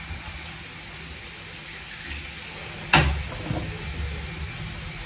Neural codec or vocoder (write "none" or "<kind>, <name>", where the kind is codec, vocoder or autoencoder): none